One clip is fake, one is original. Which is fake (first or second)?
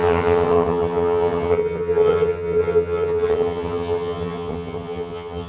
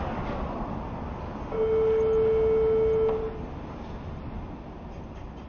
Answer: first